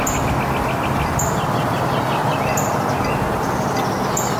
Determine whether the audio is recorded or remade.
recorded